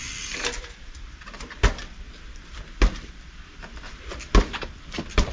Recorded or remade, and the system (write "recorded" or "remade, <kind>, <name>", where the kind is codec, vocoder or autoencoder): remade, vocoder, BigVGAN v2